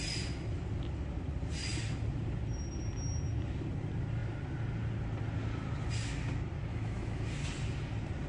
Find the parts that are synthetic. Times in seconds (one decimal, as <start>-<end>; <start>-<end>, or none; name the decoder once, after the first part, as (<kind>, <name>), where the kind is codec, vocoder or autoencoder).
6.7-7.2 (autoencoder, DAC-VAE)